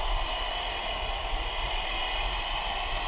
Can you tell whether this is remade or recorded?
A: recorded